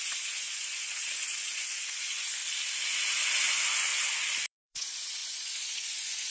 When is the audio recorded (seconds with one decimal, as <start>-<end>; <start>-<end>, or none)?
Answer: 2.4-3.5; 3.9-4.5